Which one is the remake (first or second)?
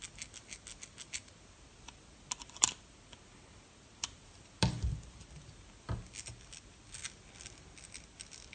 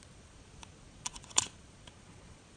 second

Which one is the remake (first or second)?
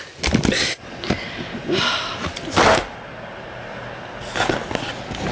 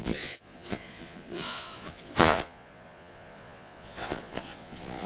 second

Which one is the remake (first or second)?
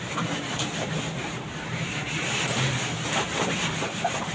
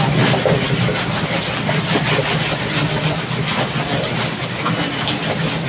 first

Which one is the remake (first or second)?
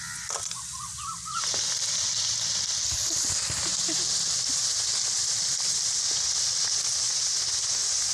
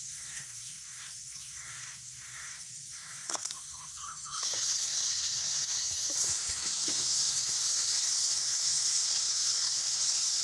second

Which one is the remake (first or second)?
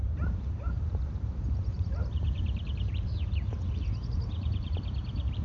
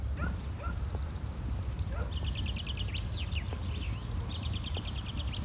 first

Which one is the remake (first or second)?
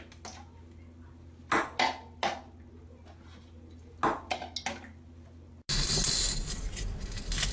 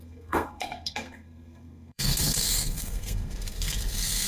second